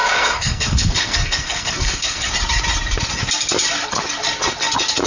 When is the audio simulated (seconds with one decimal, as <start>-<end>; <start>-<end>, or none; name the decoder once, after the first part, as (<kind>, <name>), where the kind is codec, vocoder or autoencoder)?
0.0-2.3 (codec, SNAC)